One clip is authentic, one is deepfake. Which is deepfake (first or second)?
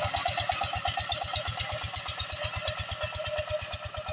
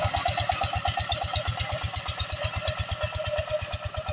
second